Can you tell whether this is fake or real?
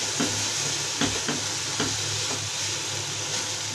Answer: real